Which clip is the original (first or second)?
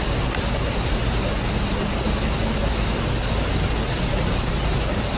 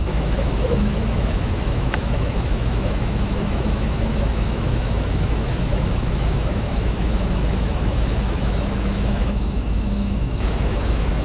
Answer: first